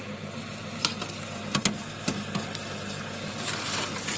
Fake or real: real